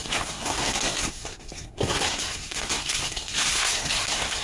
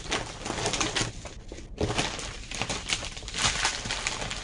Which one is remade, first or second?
first